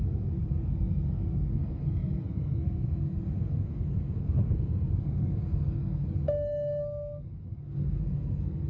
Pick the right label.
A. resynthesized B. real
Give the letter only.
A